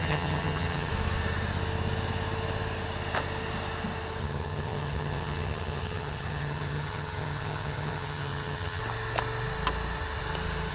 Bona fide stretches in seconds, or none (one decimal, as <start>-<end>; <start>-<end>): 0.9-4.2; 8.8-10.7

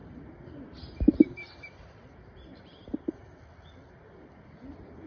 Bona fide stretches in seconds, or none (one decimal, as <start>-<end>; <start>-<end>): 0.0-1.3; 2.8-5.1

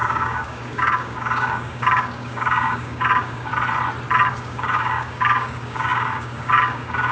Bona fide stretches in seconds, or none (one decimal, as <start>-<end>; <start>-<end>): 3.5-4.3

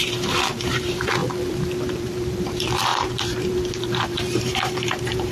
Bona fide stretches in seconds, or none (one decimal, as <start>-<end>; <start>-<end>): 1.2-1.8